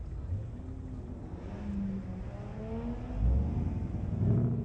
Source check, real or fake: real